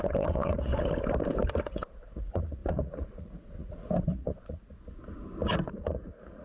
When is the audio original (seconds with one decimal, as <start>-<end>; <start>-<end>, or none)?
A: 0.7-1.6; 4.7-5.7